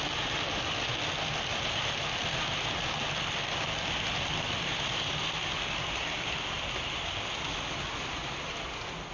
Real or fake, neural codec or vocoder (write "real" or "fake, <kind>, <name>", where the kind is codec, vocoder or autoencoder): real